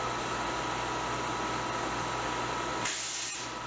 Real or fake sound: real